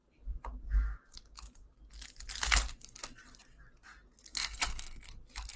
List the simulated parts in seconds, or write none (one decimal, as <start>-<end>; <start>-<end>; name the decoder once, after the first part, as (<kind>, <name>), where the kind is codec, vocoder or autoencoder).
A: 4.3-5.1 (codec, SNAC)